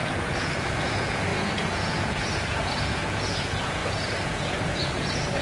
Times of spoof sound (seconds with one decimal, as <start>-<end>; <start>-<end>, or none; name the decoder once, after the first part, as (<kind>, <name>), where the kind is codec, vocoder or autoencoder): 0.0-5.4 (vocoder, Vocos)